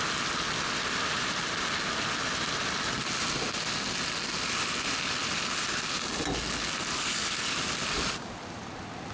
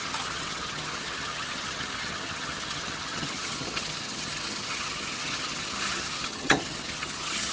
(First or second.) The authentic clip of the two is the first